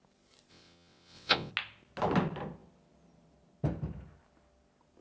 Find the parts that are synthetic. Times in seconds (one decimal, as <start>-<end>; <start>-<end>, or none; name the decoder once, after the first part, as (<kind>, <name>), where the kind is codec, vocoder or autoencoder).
0.5-1.5 (vocoder, WaveNeXt)